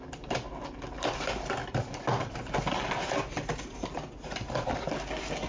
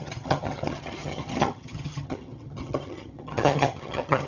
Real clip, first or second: first